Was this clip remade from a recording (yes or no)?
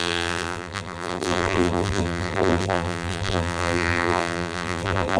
yes